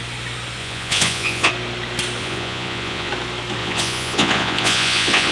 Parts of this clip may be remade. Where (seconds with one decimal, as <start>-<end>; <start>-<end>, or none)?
0.6-1.5; 2.2-3.1; 3.6-5.3